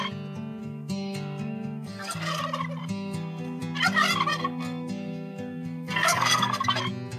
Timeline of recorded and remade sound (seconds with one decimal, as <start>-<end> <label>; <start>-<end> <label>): 0.0-0.6 recorded; 0.6-2.4 remade; 2.4-2.8 recorded; 2.8-3.6 remade; 3.6-4.3 recorded; 4.3-6.8 remade; 6.8-7.2 recorded